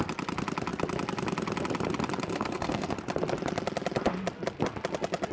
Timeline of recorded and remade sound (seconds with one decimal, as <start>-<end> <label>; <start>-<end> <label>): 0.0-2.3 recorded; 2.3-2.9 remade; 2.9-5.3 recorded